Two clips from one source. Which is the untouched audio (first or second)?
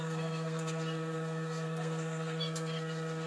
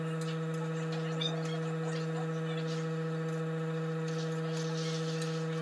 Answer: second